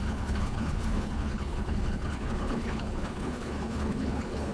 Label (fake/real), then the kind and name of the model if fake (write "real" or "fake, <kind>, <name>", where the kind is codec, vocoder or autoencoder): fake, codec, HILCodec